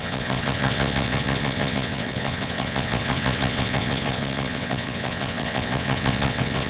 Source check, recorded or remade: remade